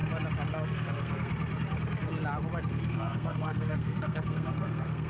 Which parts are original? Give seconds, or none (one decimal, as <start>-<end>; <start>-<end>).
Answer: 0.0-0.5; 1.3-2.7